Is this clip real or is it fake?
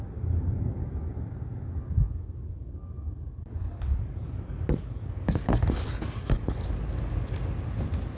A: real